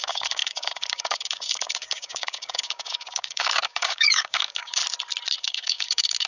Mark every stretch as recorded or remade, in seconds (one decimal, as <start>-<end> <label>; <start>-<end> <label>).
0.0-4.8 remade; 4.8-5.4 recorded; 5.4-6.3 remade